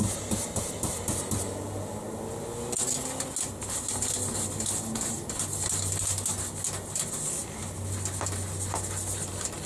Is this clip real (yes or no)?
yes